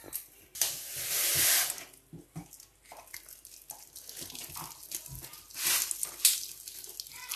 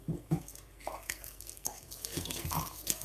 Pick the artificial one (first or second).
second